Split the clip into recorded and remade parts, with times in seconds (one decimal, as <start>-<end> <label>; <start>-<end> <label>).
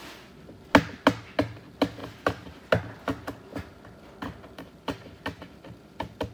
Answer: 0.0-0.7 remade; 0.7-2.0 recorded; 2.0-2.8 remade; 2.8-3.5 recorded; 3.5-6.3 remade